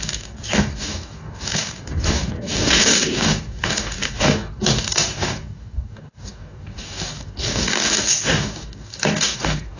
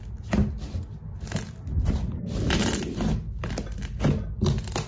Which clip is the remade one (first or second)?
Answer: first